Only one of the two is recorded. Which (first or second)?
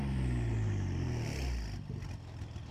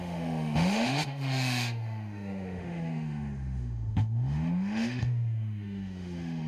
first